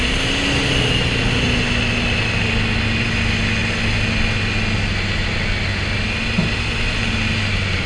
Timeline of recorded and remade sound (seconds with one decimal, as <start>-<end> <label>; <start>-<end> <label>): 0.0-7.9 recorded